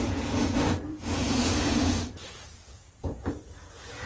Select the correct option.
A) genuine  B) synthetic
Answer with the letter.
B